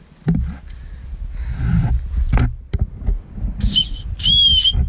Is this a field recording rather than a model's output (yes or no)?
yes